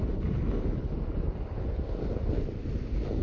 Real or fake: real